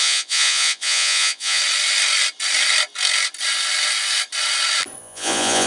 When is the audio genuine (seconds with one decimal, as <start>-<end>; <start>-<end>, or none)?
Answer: 1.6-5.0